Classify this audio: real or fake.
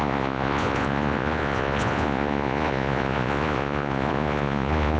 fake